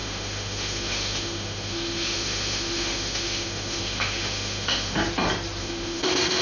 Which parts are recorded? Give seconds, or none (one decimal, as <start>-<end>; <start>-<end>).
5.0-5.6